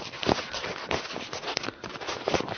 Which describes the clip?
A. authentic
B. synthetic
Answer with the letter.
A